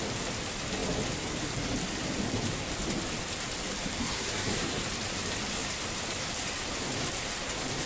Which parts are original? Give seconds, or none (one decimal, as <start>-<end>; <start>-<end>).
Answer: 0.0-4.0; 4.8-7.9